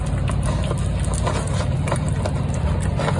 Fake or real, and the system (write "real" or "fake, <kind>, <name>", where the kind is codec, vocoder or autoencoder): real